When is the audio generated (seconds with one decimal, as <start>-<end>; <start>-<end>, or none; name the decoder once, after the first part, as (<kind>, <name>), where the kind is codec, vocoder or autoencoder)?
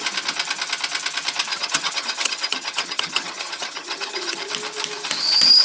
1.5-4.5 (vocoder, HiFi-GAN)